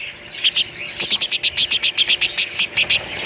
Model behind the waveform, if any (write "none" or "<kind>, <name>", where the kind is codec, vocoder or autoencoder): none